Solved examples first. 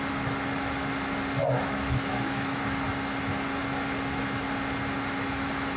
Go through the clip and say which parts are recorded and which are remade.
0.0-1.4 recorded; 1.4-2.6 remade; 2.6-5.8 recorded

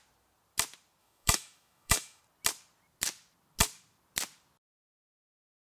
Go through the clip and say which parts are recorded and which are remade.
0.0-1.0 recorded; 1.0-2.2 remade; 2.2-5.7 recorded

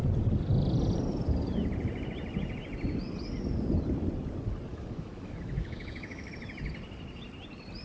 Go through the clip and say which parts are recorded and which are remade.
0.0-4.7 recorded; 4.7-6.3 remade; 6.3-7.8 recorded

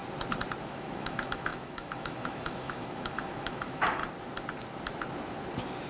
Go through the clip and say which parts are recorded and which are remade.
0.0-0.6 recorded; 0.6-4.0 remade; 4.0-5.9 recorded